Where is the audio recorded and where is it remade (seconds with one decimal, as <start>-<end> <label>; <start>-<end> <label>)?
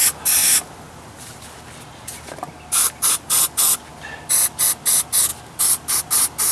0.0-0.4 recorded; 0.4-1.4 remade; 1.4-2.8 recorded; 2.8-3.9 remade; 3.9-5.3 recorded; 5.3-6.0 remade; 6.0-6.5 recorded